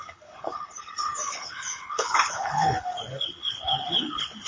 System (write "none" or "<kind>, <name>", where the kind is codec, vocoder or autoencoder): codec, HILCodec